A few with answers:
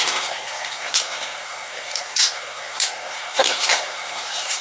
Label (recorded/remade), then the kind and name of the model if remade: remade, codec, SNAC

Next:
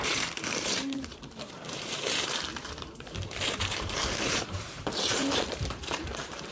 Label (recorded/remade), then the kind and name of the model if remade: remade, vocoder, BigVGAN v2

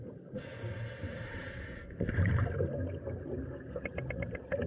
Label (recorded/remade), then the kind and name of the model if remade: recorded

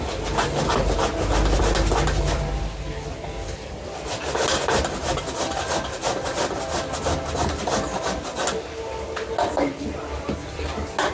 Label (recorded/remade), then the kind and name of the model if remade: recorded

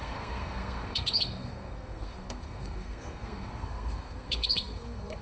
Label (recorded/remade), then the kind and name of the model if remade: remade, codec, SNAC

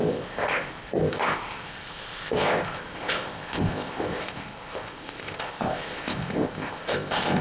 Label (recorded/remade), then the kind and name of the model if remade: remade, codec, ZipCodec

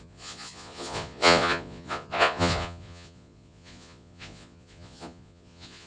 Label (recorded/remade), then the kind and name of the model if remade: remade, vocoder, Vocos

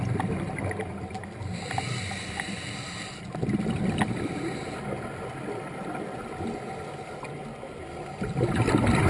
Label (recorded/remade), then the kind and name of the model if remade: recorded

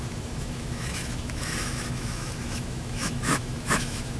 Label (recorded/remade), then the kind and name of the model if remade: remade, autoencoder, DAC-VAE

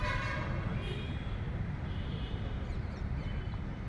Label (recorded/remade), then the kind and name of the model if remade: remade, vocoder, BigVGAN v2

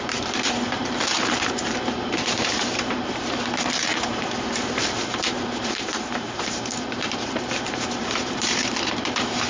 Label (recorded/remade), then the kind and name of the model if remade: remade, vocoder, BigVGAN v2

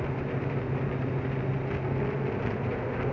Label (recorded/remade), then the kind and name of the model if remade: recorded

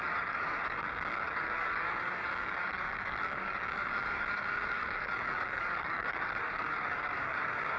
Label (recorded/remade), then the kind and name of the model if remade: remade, codec, DAC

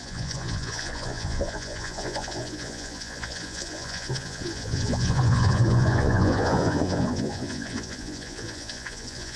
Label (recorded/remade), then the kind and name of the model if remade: remade, vocoder, Vocos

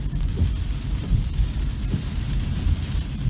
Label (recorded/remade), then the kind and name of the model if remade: remade, vocoder, BigVGAN v2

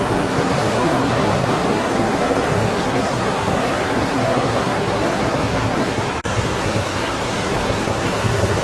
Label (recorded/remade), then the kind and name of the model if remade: remade, codec, SNAC